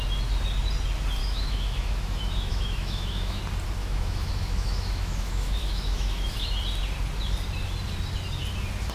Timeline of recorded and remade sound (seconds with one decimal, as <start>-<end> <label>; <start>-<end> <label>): 0.0-1.2 recorded; 1.2-3.4 remade; 3.4-3.8 recorded; 3.8-6.5 remade; 6.5-8.9 recorded